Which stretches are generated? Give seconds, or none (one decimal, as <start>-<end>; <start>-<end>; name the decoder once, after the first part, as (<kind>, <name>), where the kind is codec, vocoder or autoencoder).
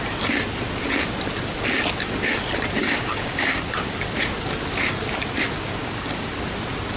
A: 2.8-3.6 (codec, DAC); 5.8-6.3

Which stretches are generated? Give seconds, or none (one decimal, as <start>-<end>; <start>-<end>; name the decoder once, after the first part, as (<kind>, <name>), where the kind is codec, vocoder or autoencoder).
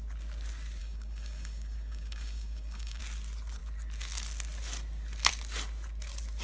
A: 0.8-3.0 (codec, DAC)